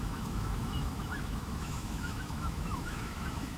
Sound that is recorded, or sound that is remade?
remade